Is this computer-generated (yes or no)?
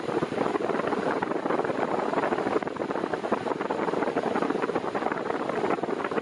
no